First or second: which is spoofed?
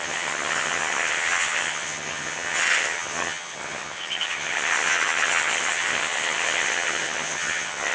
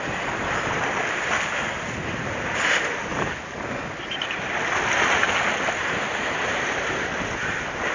first